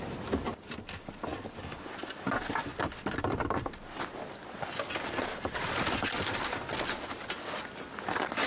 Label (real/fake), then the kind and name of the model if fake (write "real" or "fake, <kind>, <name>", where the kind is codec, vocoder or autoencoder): real